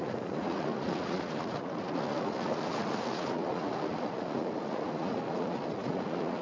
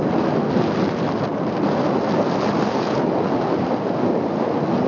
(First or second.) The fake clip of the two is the first